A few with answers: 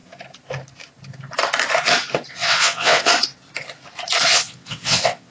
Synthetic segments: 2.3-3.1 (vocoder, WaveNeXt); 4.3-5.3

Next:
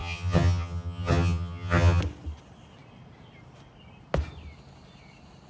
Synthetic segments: 0.0-2.0 (vocoder, HiFi-GAN)

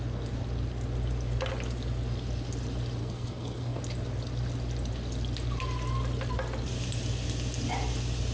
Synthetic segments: 3.0-3.8 (codec, SNAC)

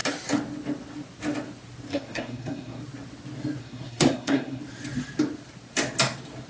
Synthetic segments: 1.9-2.8 (codec, SNAC); 3.6-4.6

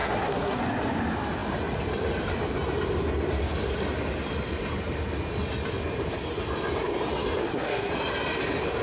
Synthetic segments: 0.0-0.6 (codec, SNAC); 7.4-7.9

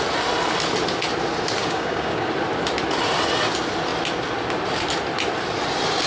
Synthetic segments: 1.6-2.3 (codec, DAC)

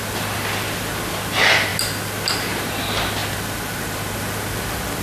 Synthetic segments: none

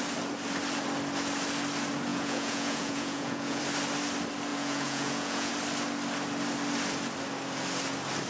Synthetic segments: 2.1-3.6 (vocoder, Vocos); 4.5-5.5